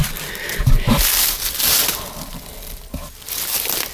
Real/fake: real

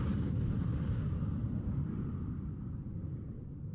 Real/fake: real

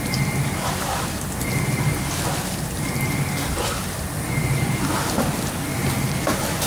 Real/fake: fake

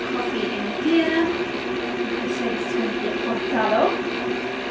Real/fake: real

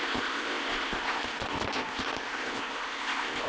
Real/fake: fake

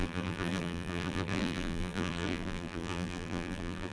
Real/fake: fake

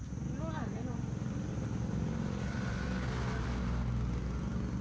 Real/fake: real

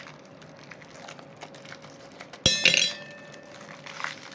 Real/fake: real